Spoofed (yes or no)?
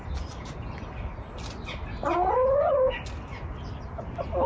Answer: no